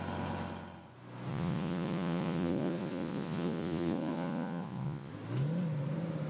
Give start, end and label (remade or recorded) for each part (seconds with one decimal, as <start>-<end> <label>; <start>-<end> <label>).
0.0-1.3 recorded; 1.3-5.1 remade; 5.1-6.3 recorded